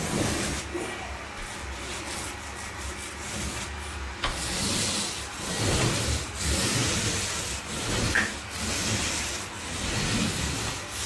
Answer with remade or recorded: recorded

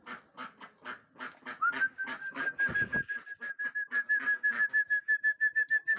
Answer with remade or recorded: recorded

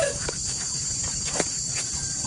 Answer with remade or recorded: recorded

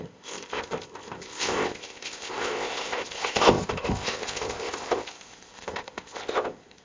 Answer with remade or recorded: remade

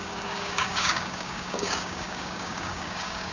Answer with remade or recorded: remade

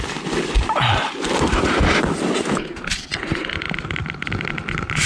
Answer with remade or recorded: recorded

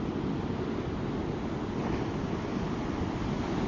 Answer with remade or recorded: recorded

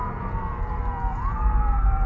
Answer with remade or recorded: remade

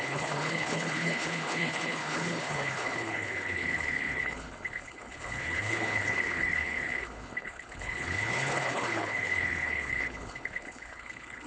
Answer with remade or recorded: remade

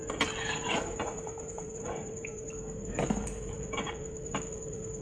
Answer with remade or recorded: remade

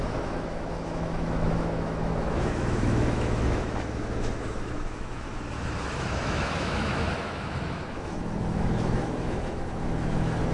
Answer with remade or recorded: remade